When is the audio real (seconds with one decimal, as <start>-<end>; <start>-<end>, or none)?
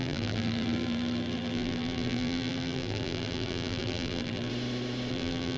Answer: 4.5-5.1